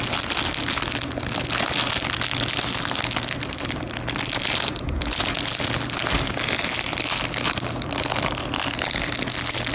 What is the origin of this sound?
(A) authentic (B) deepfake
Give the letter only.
A